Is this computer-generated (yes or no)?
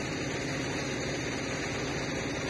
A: no